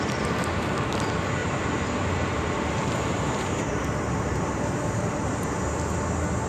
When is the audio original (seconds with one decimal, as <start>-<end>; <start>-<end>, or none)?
0.0-1.4; 5.3-6.5